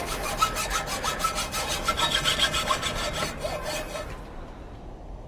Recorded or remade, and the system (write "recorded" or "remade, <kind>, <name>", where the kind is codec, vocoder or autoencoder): recorded